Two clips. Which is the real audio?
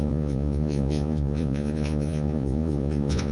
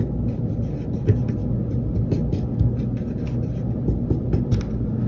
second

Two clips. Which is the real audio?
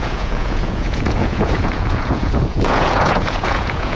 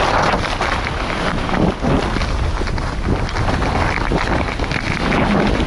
second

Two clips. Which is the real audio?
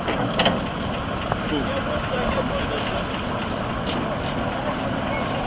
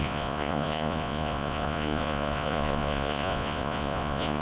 first